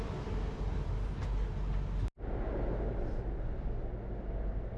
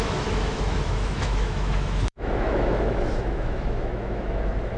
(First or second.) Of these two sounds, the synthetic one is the second